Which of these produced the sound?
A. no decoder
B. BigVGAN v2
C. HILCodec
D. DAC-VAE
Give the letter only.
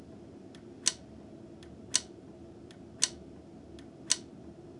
A